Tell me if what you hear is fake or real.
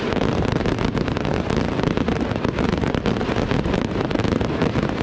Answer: fake